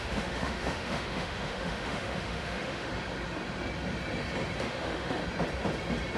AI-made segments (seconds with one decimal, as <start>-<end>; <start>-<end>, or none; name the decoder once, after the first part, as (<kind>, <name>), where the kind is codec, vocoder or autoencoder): 0.0-2.9 (autoencoder, DAC-VAE); 4.6-5.2